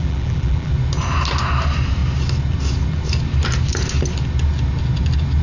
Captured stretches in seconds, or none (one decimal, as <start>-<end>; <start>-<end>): 0.7-5.4